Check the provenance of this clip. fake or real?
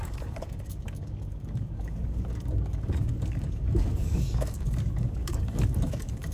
fake